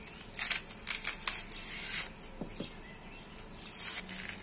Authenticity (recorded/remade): recorded